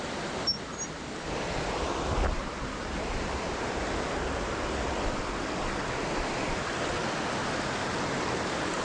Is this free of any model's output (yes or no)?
yes